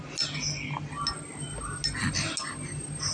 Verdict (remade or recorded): recorded